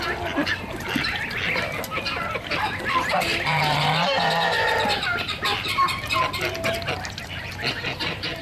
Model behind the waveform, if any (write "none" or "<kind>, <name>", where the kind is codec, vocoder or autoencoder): none